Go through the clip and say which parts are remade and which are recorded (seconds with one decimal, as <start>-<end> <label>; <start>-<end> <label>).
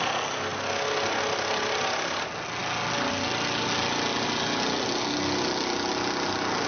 0.0-6.7 recorded